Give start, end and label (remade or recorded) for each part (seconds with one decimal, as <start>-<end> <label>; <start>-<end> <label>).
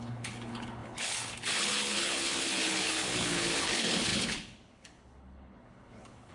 0.0-6.3 remade